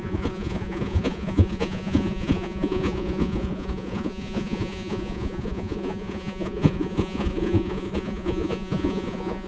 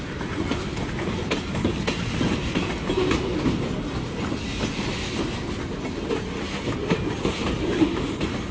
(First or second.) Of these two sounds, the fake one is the first